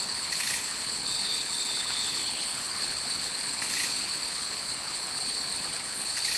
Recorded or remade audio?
remade